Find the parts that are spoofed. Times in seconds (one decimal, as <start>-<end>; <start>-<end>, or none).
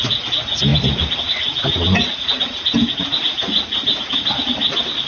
none